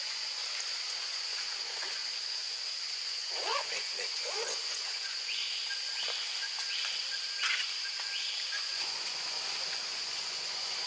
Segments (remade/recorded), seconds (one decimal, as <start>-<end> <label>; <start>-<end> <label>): 0.0-0.4 remade; 0.4-0.9 recorded; 0.9-2.0 remade; 2.0-3.1 recorded; 3.1-5.4 remade; 5.4-8.5 recorded; 8.5-10.9 remade